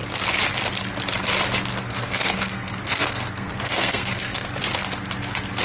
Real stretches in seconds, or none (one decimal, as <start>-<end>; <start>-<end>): 0.0-1.7; 4.5-5.6